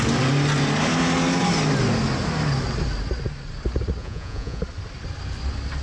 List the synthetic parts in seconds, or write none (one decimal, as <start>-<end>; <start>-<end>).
4.0-4.6